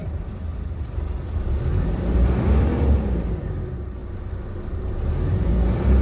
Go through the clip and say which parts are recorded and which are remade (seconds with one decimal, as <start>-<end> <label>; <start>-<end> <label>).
0.0-4.0 remade; 4.0-5.4 recorded; 5.4-6.0 remade